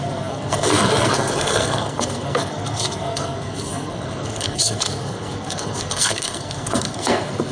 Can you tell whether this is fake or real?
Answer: fake